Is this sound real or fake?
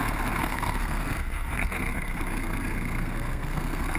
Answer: fake